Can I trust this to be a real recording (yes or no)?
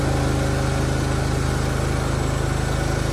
yes